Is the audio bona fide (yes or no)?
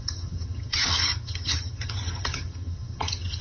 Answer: no